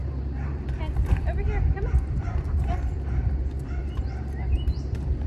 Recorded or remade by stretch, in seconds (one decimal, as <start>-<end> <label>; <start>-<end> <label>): 0.0-0.8 remade; 0.8-3.8 recorded; 3.8-5.3 remade